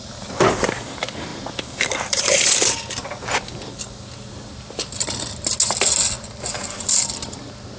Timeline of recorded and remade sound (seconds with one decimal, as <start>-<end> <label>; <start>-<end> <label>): 0.0-7.8 recorded